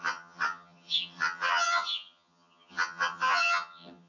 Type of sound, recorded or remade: remade